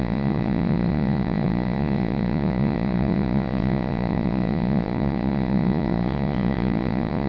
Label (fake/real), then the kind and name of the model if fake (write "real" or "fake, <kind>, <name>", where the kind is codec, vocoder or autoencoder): fake, vocoder, Vocos